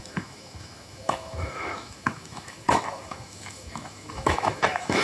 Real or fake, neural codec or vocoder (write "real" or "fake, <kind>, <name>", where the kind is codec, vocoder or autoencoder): fake, autoencoder, DAC-VAE